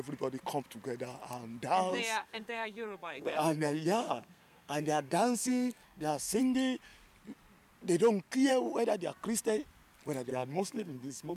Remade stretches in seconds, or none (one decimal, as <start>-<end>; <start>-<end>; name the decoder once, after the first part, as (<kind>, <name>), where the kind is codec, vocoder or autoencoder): 1.9-6.4 (codec, SNAC); 10.3-11.4